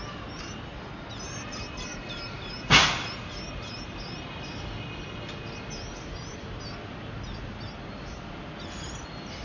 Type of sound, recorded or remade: recorded